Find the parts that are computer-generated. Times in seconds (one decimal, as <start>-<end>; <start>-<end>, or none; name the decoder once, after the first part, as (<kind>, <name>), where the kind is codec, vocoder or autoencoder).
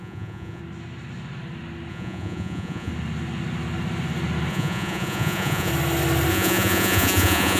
0.0-0.6 (vocoder, Vocos); 1.9-2.9; 4.5-5.7; 6.3-7.6